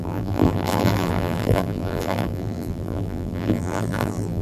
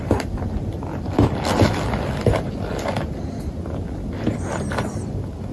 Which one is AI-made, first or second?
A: first